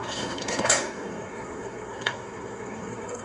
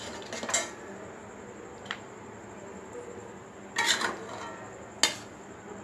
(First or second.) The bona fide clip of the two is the second